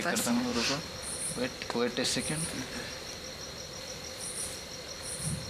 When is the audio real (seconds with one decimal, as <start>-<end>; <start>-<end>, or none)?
0.5-3.8